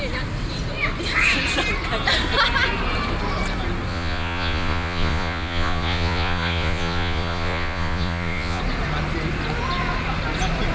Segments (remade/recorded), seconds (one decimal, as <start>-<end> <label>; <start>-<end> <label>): 0.0-3.9 recorded; 3.9-8.6 remade; 8.6-10.7 recorded